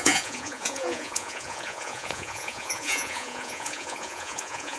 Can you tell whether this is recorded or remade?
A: remade